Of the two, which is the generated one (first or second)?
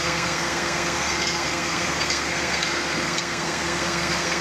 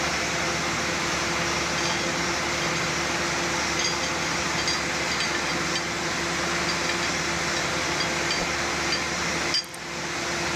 first